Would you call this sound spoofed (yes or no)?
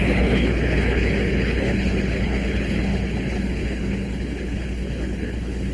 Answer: yes